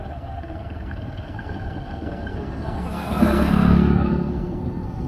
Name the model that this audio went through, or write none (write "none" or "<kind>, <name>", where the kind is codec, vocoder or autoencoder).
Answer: codec, SNAC